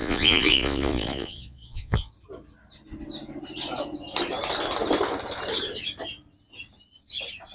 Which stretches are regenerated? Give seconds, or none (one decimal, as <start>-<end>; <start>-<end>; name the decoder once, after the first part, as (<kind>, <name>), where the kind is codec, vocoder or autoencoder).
0.0-2.1 (vocoder, Vocos)